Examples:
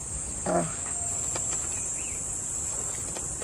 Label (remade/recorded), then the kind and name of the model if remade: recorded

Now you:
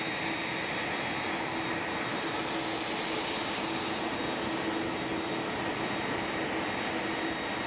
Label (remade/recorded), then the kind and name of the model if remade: recorded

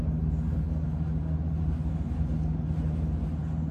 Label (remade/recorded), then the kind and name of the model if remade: recorded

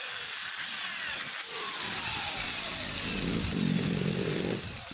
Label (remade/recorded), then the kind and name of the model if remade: recorded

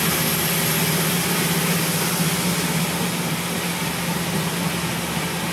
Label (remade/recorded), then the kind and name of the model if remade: recorded